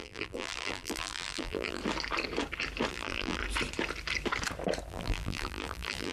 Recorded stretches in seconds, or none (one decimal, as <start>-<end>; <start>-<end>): 1.8-2.9; 3.4-4.9